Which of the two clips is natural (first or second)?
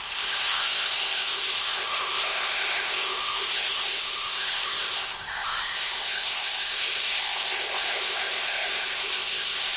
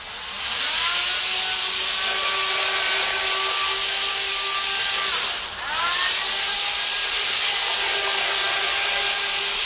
second